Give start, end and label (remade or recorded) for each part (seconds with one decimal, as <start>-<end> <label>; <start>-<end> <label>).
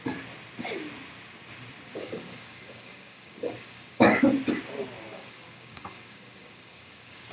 0.0-2.0 recorded; 2.0-4.2 remade; 4.2-5.1 recorded; 5.1-7.3 remade